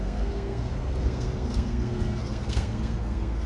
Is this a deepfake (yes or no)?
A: yes